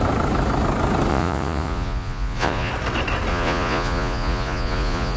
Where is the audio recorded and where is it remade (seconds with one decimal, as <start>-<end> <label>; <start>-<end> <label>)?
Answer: 0.0-1.1 recorded; 1.1-2.7 remade; 2.7-3.3 recorded; 3.3-5.2 remade